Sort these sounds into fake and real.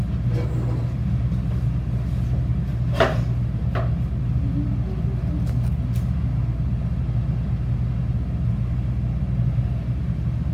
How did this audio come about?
real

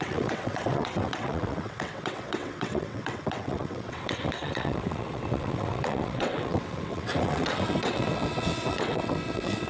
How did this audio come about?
fake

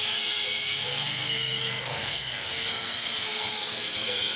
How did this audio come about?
fake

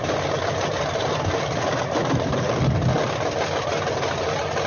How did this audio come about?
real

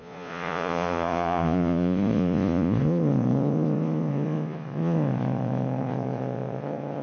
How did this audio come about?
fake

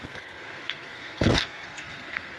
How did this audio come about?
fake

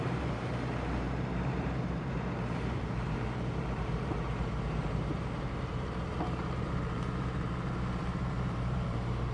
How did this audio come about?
fake